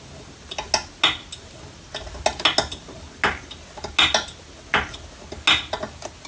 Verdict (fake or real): real